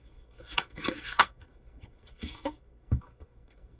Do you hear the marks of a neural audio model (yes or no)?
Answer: yes